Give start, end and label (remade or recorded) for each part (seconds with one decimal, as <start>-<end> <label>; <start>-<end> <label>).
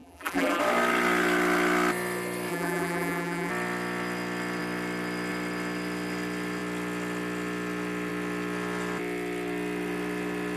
0.0-0.6 remade; 0.6-2.5 recorded; 2.5-3.5 remade; 3.5-10.6 recorded